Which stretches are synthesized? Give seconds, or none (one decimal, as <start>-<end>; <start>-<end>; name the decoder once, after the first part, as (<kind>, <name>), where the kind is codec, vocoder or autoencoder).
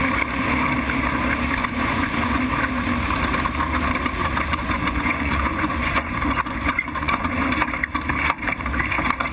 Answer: 1.6-2.4 (vocoder, Vocos); 4.2-7.3